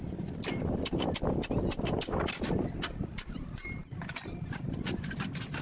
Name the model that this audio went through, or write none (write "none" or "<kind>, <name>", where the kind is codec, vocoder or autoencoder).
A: none